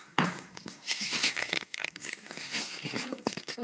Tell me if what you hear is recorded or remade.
remade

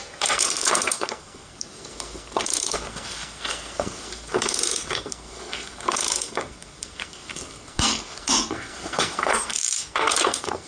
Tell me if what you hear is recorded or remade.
remade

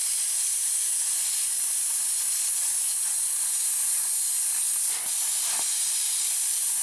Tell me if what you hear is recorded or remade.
recorded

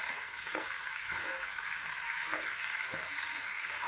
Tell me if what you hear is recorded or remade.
remade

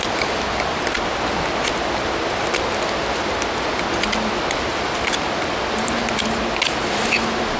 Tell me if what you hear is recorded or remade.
recorded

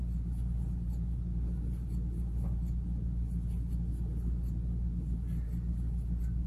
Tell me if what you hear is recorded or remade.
recorded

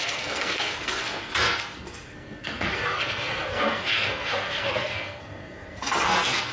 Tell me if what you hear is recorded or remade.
remade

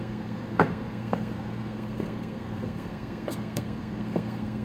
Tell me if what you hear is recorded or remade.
remade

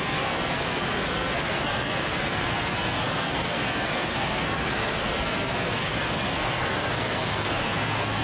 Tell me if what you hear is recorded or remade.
remade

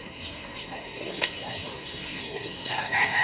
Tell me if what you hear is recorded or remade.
remade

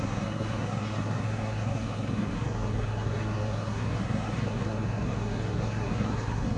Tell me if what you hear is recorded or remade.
remade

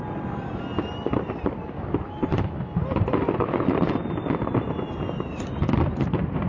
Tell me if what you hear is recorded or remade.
recorded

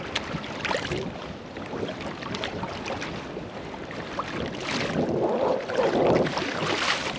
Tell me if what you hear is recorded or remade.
recorded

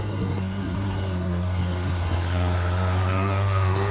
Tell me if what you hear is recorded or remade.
remade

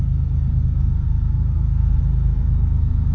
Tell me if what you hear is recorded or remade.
remade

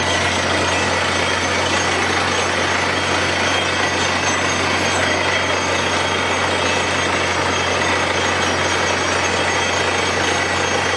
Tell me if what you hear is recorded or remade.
recorded